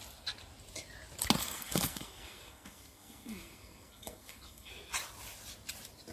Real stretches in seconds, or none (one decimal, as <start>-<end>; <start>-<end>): 0.0-1.4; 4.7-6.1